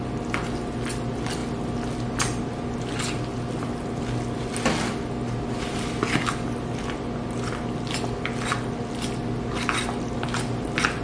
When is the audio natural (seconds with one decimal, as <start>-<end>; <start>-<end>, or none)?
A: 0.0-11.0